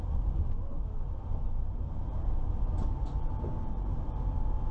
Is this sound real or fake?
real